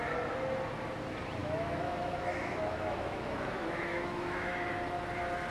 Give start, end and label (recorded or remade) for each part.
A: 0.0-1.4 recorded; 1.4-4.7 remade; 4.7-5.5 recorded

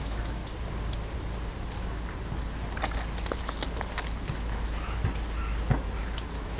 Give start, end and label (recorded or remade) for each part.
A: 0.0-0.4 remade; 0.4-4.4 recorded; 4.4-5.0 remade; 5.0-6.0 recorded; 6.0-6.6 remade

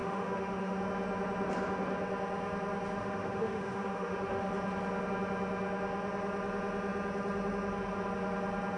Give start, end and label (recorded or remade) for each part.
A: 0.0-0.8 remade; 0.8-3.0 recorded; 3.0-4.5 remade; 4.5-8.8 recorded

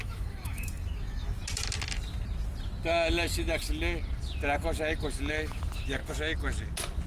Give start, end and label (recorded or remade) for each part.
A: 0.0-1.4 remade; 1.4-5.3 recorded; 5.3-6.0 remade; 6.0-7.1 recorded

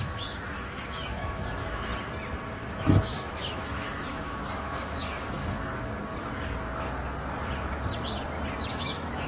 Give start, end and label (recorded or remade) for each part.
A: 0.0-1.9 remade; 1.9-2.7 recorded; 2.7-5.4 remade; 5.4-8.7 recorded; 8.7-9.3 remade

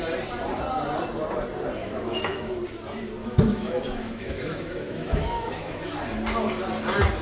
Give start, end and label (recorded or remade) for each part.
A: 0.0-1.8 recorded; 1.8-2.6 remade; 2.6-3.2 recorded; 3.2-6.0 remade; 6.0-7.2 recorded

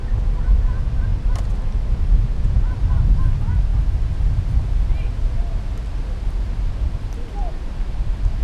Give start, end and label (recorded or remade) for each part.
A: 0.0-8.4 recorded

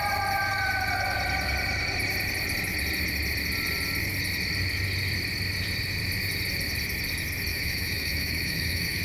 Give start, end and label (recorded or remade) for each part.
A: 0.0-7.5 recorded; 7.5-9.0 remade